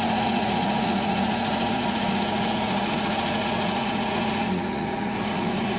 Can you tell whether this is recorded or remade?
remade